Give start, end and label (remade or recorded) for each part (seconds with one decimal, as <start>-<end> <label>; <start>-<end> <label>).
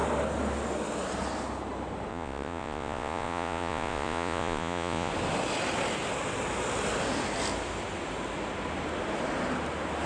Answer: 0.0-2.1 recorded; 2.1-5.1 remade; 5.1-10.1 recorded